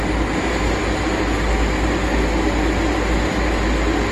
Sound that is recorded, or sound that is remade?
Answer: recorded